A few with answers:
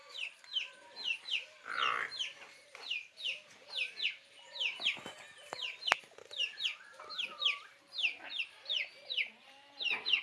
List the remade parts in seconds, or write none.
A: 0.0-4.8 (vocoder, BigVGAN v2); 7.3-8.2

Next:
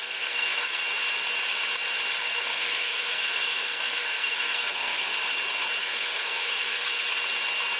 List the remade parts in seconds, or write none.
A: 0.0-0.8 (codec, SNAC); 2.2-5.1; 5.8-6.9

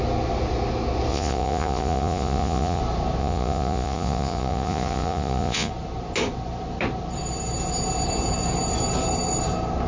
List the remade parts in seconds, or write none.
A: 1.1-2.8 (vocoder, Vocos); 3.2-5.7

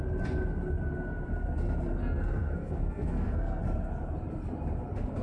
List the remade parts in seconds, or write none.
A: 2.0-3.6 (codec, SNAC)

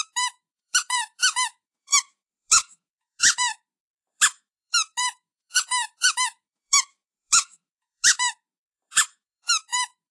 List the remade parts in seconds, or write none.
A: 0.0-10.1 (autoencoder, DAC-VAE)